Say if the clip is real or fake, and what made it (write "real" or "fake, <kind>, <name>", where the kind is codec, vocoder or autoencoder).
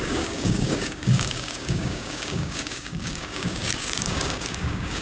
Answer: fake, codec, DAC